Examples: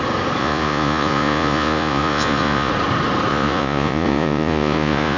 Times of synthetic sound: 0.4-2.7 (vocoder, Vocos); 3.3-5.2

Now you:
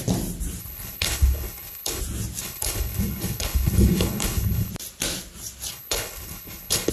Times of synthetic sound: 0.6-2.0 (codec, HILCodec); 2.4-4.7; 5.7-6.9

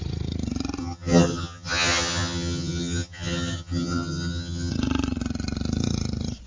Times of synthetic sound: 0.8-4.7 (vocoder, HiFi-GAN)

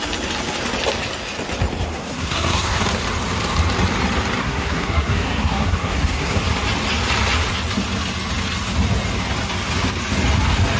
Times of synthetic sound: 1.9-2.8 (codec, SNAC); 4.4-6.4

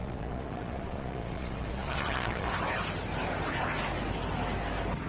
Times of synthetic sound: 0.0-2.5 (vocoder, Vocos)

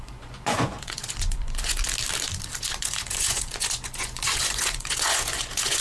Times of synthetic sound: 0.0-1.8 (vocoder, Vocos); 2.6-5.8